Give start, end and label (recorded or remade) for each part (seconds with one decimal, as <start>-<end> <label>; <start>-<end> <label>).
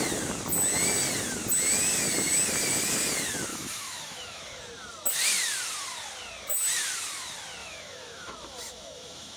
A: 0.0-3.5 recorded; 3.5-4.6 remade; 4.6-7.6 recorded; 7.6-9.4 remade